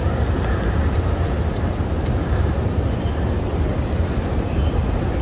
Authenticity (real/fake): real